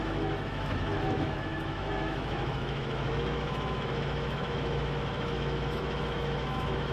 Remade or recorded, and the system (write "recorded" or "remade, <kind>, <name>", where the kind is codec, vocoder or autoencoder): remade, autoencoder, DAC-VAE